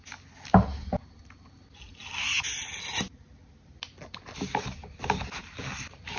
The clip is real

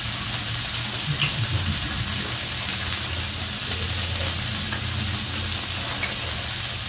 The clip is real